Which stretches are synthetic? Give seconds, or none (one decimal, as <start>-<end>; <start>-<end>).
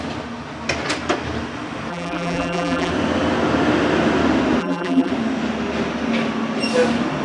1.9-2.9; 4.6-5.1